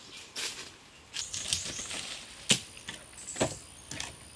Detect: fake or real real